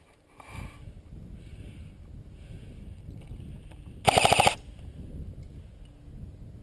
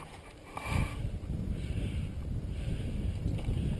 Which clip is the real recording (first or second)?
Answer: first